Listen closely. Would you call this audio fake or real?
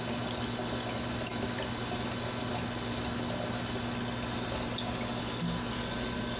real